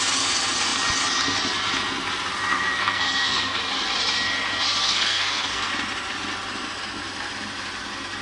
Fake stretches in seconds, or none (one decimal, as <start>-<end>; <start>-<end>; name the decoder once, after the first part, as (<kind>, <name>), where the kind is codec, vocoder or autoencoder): 2.5-3.6 (codec, SNAC); 4.8-5.7